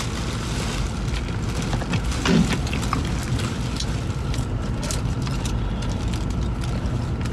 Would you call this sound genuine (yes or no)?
yes